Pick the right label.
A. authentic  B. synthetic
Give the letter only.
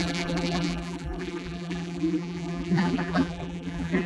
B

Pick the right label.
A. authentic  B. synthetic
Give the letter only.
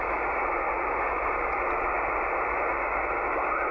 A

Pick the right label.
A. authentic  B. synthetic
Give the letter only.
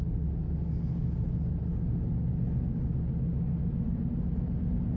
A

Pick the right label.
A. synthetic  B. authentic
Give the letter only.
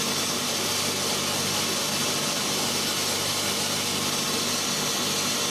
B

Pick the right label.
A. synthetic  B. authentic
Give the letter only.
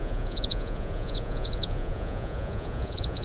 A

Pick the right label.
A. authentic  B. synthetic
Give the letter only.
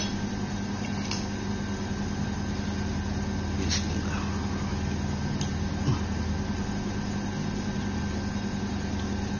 A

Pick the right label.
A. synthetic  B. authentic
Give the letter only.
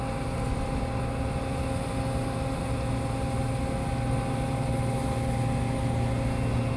B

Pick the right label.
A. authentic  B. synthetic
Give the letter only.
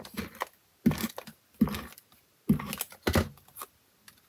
A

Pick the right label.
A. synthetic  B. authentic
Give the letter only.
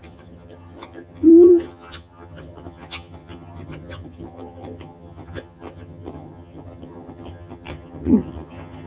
A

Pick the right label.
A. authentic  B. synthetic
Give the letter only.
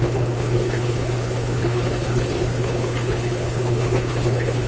B